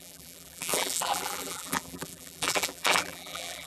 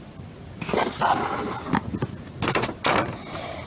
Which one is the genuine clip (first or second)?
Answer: second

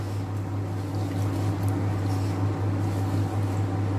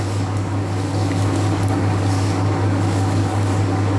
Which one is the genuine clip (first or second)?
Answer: first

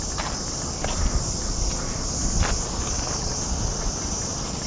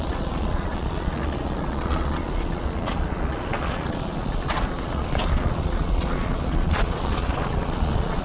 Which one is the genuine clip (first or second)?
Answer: first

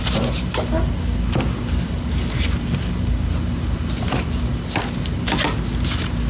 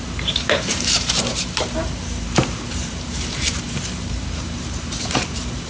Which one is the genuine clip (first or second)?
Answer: first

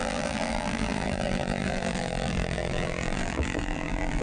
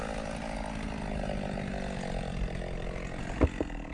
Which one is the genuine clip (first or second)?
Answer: second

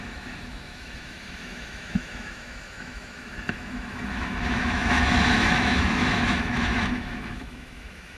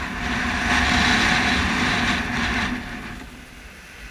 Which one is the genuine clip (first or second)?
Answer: second